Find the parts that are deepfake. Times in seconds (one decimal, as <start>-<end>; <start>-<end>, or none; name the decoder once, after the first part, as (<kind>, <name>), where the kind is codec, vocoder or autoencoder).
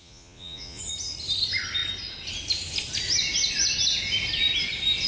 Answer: 0.0-0.8 (vocoder, Vocos)